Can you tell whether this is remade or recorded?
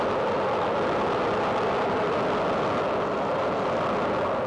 recorded